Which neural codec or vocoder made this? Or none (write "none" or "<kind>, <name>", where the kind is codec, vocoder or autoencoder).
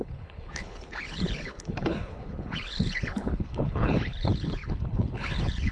codec, HILCodec